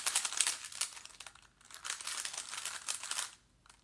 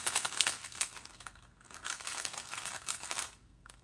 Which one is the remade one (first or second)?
second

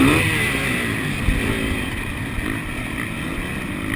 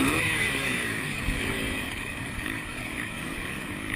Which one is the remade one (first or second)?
second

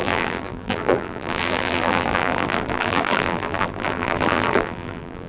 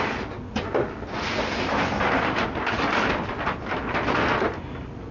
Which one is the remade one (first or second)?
first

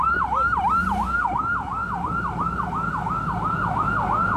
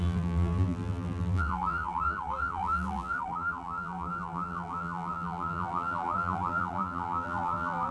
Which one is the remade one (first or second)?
second